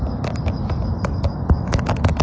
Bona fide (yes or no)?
yes